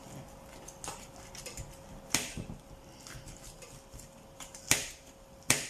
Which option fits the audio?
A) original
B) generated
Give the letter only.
A